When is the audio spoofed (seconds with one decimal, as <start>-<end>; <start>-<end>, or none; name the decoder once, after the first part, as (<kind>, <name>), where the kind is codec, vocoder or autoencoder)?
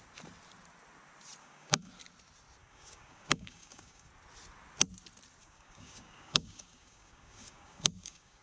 1.4-1.9 (codec, DAC); 2.6-4.1; 5.4-8.4